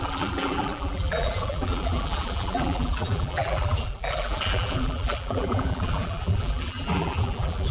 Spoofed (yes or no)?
yes